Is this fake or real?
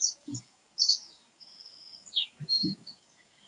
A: fake